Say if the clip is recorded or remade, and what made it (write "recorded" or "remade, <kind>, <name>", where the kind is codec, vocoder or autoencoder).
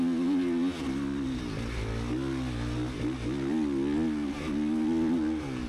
recorded